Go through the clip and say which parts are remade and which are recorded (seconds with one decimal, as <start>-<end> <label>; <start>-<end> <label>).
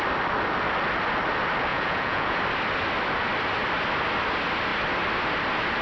0.0-1.7 recorded; 1.7-2.4 remade; 2.4-5.8 recorded